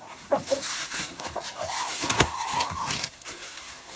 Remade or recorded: remade